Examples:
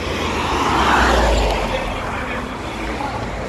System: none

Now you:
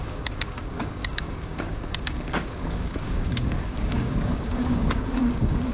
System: codec, DAC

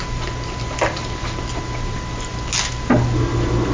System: none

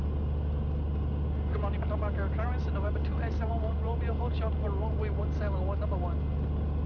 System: none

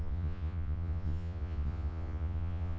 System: vocoder, Vocos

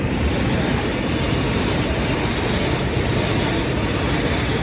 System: none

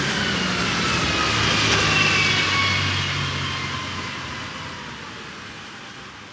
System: none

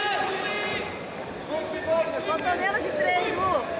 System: none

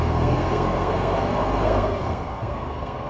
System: codec, SNAC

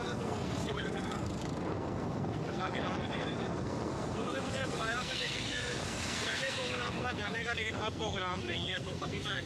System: codec, SNAC